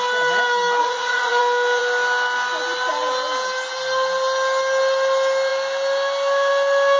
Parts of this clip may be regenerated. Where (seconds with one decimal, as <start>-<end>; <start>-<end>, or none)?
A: 0.8-1.4

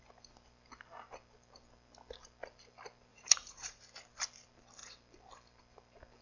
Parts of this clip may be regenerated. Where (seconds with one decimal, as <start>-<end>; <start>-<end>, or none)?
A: 3.1-3.8

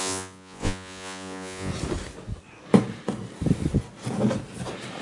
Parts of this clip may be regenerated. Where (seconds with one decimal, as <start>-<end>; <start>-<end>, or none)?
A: 0.0-1.7

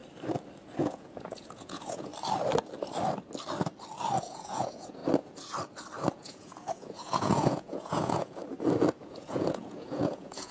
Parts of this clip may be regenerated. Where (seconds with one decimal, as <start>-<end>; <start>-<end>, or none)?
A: 0.8-2.1; 4.2-5.0; 6.1-8.4; 9.0-10.5

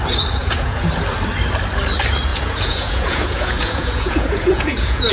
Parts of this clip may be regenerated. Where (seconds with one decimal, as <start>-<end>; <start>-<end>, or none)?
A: 0.4-0.9; 2.3-5.1

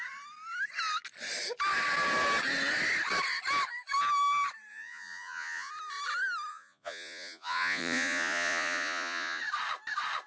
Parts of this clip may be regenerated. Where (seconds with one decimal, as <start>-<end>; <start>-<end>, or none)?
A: 4.7-5.7; 6.5-9.4